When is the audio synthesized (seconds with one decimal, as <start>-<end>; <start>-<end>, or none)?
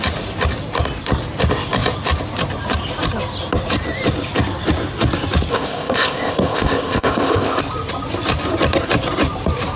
5.5-7.6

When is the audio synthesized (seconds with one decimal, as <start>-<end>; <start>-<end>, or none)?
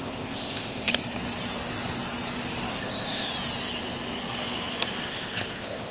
0.0-0.9; 2.7-3.3; 5.1-5.9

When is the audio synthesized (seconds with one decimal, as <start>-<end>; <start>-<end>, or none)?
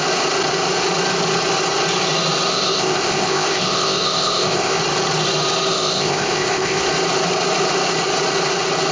2.5-4.8; 5.7-6.8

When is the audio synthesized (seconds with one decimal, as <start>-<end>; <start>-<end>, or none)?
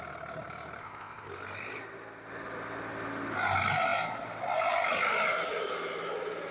0.8-1.3